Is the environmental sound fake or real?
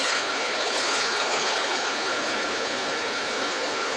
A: fake